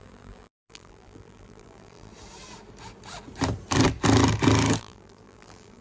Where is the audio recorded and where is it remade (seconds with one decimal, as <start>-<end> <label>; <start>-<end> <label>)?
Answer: 0.0-2.1 remade; 2.1-4.8 recorded; 4.8-5.8 remade